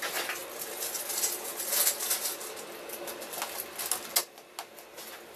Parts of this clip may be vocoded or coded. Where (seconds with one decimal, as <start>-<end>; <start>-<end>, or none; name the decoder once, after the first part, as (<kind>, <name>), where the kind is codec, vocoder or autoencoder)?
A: none